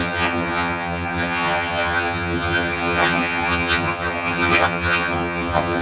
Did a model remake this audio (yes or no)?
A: yes